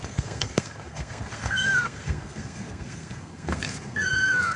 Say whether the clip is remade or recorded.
remade